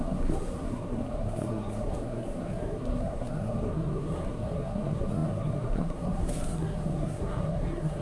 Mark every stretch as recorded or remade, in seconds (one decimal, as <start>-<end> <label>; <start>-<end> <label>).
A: 0.0-8.0 remade